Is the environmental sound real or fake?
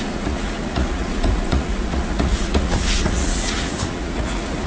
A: fake